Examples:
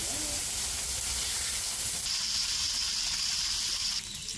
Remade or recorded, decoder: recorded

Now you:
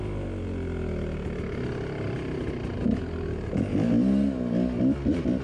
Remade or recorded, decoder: recorded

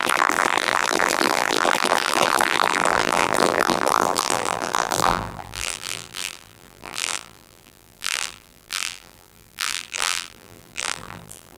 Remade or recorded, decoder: remade, vocoder, BigVGAN v2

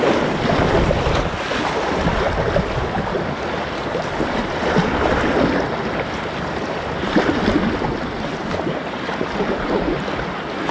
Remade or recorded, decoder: remade, vocoder, BigVGAN v2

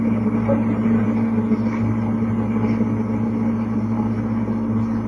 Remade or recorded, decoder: recorded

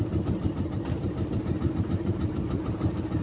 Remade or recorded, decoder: remade, vocoder, BigVGAN v2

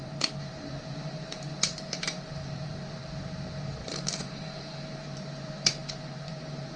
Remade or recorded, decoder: remade, vocoder, BigVGAN v2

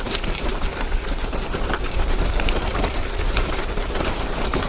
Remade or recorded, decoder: remade, vocoder, BigVGAN v2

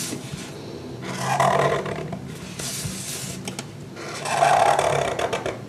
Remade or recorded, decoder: recorded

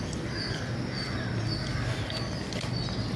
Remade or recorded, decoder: recorded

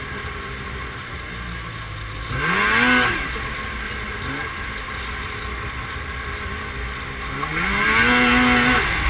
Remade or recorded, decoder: recorded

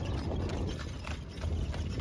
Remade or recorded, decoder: recorded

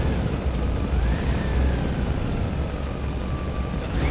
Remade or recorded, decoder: recorded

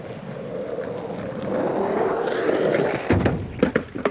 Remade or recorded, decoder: recorded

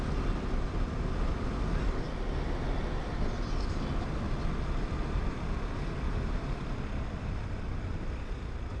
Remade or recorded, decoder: recorded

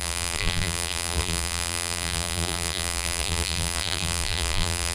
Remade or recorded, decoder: remade, vocoder, BigVGAN v2